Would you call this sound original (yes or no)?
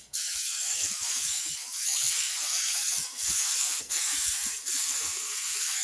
no